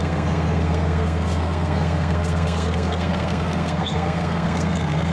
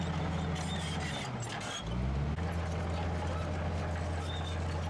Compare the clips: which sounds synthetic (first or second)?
first